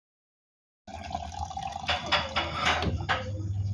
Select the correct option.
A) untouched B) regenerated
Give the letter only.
A